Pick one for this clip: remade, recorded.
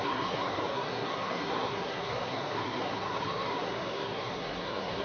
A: remade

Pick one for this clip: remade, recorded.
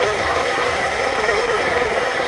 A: remade